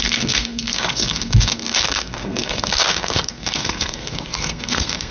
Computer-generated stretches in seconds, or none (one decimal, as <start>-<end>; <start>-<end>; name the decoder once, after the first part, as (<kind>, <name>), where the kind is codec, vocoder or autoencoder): 0.0-5.1 (codec, SNAC)

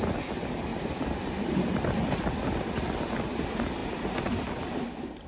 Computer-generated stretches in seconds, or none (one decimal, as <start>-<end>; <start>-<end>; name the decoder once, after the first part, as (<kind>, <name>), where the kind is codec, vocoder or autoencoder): 0.7-2.2 (vocoder, BigVGAN v2)

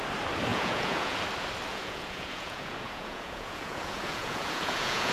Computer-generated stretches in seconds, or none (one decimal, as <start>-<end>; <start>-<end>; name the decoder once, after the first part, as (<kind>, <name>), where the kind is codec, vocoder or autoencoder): 0.5-1.2 (vocoder, Vocos); 1.7-5.1

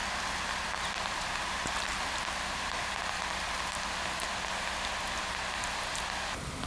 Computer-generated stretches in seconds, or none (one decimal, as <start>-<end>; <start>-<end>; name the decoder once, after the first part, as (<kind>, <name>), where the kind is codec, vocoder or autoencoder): 0.0-4.0 (vocoder, BigVGAN v2)

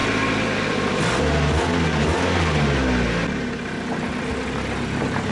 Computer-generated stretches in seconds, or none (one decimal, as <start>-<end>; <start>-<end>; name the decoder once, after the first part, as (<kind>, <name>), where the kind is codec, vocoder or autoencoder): 0.0-1.2 (vocoder, BigVGAN v2)

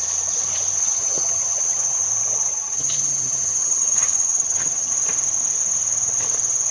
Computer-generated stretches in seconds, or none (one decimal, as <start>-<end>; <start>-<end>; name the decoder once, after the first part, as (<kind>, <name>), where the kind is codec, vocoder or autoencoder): 0.8-2.0 (vocoder, HiFi-GAN); 2.5-4.9

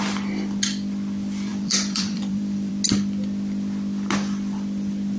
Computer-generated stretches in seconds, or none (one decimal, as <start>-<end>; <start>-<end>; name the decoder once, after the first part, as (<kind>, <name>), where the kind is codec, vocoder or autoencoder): 1.5-2.7 (vocoder, BigVGAN v2)

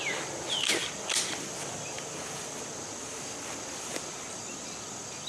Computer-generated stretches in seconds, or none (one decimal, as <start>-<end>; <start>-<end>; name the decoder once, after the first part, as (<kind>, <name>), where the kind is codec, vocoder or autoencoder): none